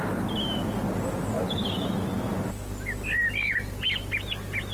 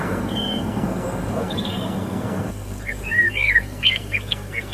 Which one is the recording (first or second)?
first